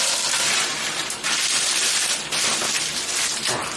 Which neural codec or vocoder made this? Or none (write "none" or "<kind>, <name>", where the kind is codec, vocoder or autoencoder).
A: none